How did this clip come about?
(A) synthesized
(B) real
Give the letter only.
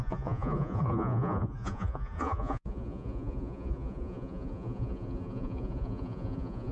A